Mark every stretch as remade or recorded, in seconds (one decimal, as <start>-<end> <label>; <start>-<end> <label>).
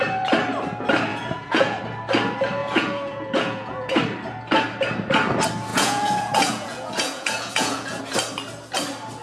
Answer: 0.0-1.1 recorded; 1.1-1.8 remade; 1.8-2.6 recorded; 2.6-4.0 remade; 4.0-5.7 recorded; 5.7-8.0 remade; 8.0-9.2 recorded